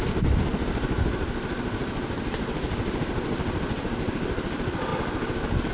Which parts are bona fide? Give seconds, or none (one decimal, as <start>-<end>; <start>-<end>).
0.0-5.7